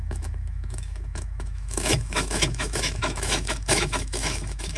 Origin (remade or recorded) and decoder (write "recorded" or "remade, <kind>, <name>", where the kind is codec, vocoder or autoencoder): remade, autoencoder, DAC-VAE